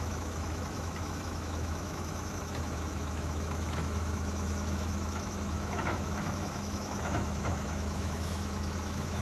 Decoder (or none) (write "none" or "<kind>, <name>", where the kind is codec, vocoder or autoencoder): autoencoder, DAC-VAE